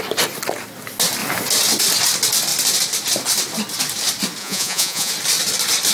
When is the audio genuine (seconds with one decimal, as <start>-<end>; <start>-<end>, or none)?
0.0-4.4; 5.1-5.9